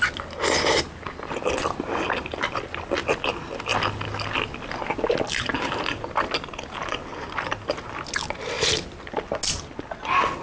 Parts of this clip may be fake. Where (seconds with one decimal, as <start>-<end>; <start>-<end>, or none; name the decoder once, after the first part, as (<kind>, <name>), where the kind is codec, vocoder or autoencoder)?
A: none